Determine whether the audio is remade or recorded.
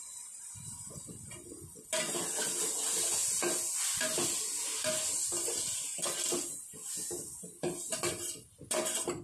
recorded